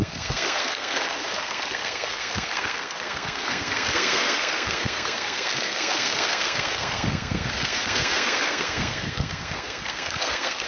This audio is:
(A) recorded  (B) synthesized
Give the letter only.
B